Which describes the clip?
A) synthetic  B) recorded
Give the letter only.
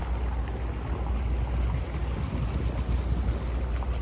B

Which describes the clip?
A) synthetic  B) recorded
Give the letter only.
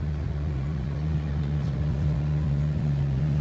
A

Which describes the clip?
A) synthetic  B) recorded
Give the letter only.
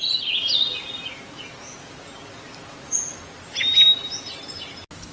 B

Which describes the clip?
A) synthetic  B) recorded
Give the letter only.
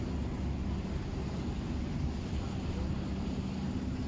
B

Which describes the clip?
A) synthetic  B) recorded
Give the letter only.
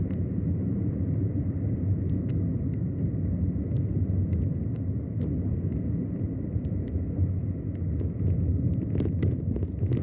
B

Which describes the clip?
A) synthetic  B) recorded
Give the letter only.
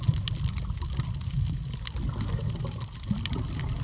B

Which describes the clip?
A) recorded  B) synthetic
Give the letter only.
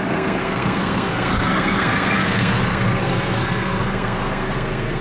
B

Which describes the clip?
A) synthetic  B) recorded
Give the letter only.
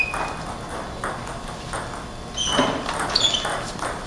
B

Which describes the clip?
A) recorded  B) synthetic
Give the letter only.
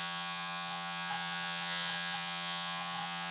B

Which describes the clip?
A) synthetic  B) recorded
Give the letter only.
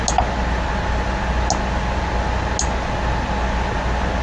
B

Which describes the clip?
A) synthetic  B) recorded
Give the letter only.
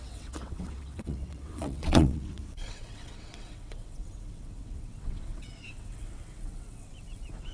A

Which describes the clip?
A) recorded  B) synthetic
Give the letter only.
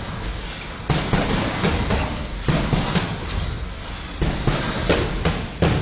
A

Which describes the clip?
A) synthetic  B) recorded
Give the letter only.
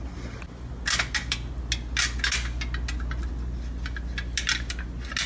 B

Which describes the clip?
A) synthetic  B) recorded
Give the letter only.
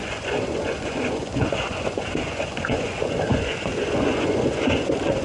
A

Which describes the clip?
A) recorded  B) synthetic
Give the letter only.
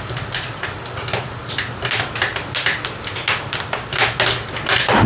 A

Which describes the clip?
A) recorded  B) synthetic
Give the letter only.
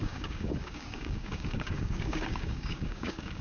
B